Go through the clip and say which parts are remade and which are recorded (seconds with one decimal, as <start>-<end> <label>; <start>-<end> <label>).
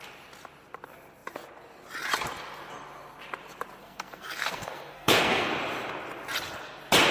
0.0-3.8 recorded; 3.8-5.5 remade; 5.5-7.1 recorded